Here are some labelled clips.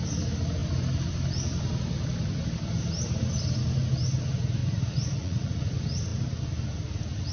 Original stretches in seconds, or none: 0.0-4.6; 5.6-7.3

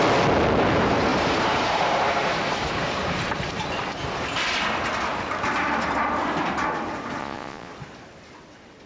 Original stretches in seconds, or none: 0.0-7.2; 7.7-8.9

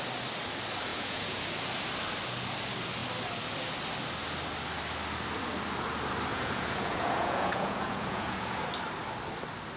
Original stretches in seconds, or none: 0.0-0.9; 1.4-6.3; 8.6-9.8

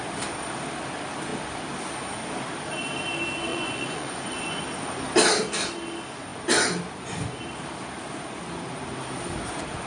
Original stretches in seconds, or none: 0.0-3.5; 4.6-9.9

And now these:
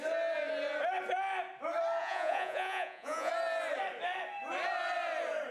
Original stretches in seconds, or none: 0.0-2.0; 3.3-5.5